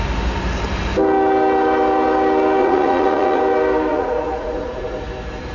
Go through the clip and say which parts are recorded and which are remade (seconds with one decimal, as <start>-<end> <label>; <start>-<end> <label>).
0.0-2.6 recorded; 2.6-3.4 remade; 3.4-3.9 recorded; 3.9-5.1 remade; 5.1-5.5 recorded